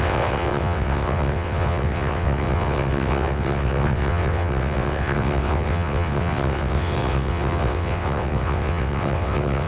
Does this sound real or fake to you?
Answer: fake